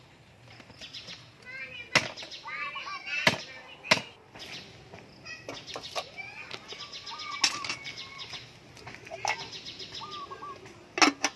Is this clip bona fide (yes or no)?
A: yes